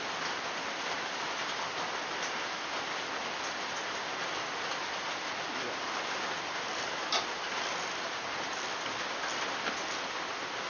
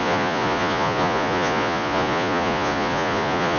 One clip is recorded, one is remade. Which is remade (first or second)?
second